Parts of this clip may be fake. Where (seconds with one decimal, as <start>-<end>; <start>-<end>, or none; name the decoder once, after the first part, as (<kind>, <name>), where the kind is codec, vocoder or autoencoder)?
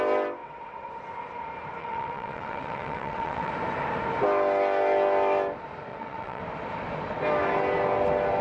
0.4-0.9 (vocoder, WaveNeXt); 1.8-3.5; 5.9-6.4